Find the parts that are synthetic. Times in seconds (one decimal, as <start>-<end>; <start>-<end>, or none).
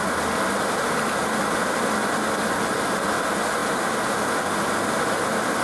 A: none